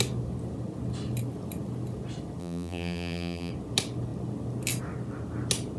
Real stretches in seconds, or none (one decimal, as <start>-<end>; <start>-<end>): 0.0-2.4; 3.5-5.8